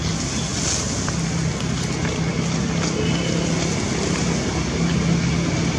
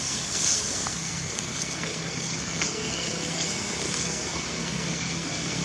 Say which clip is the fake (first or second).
second